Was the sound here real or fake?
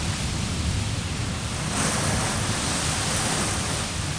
real